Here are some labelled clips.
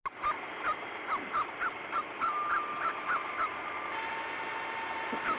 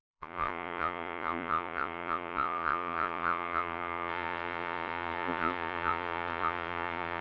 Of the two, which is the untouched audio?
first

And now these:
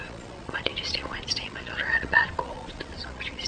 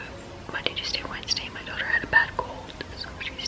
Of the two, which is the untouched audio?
second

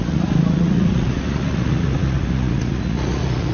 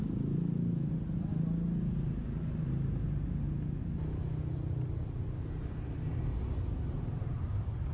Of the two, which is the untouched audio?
second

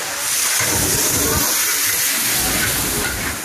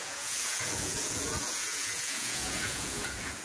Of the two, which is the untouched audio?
first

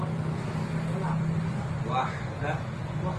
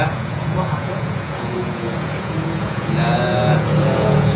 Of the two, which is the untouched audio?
first